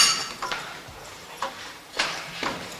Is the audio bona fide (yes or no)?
no